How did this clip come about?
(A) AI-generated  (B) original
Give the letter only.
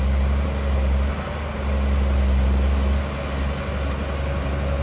B